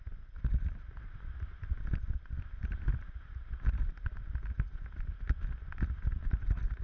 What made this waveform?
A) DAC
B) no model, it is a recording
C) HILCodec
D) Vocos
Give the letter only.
B